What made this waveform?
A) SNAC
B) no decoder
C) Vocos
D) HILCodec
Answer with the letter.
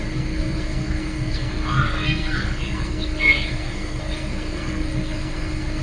A